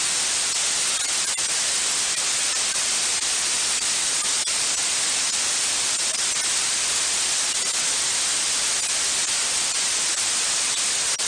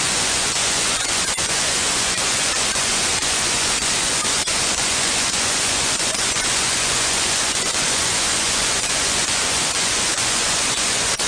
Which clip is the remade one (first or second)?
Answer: second